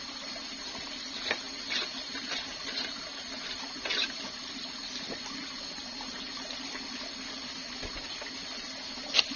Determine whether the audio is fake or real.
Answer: real